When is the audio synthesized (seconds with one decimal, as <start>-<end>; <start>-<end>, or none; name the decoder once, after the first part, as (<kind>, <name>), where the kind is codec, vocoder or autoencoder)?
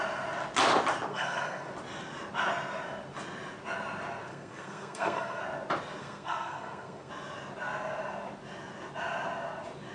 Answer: 1.1-1.7 (codec, SNAC); 4.3-5.4; 6.0-7.1